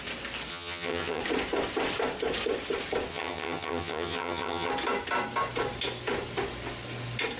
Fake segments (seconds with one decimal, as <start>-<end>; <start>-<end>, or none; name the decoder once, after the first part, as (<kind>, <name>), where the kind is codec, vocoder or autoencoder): 0.5-1.2 (vocoder, HiFi-GAN); 3.1-4.7